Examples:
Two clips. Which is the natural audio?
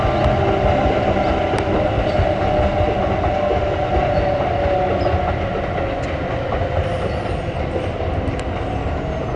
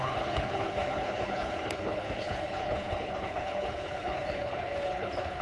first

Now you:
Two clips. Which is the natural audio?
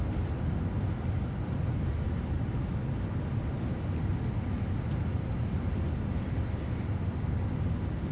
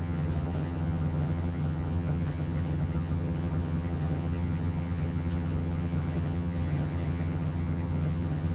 first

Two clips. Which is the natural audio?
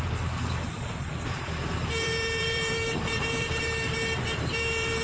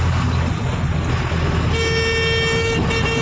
second